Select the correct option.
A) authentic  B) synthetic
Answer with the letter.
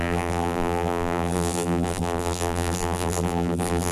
B